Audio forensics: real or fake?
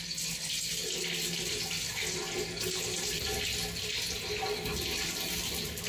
real